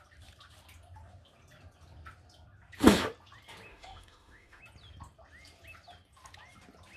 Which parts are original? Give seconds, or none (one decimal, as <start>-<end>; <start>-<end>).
0.0-3.7; 4.6-7.0